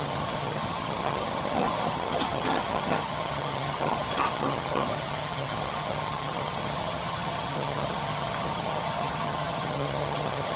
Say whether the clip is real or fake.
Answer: fake